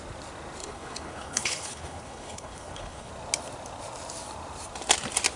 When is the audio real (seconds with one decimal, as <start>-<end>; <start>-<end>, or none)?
0.0-0.6; 3.1-5.4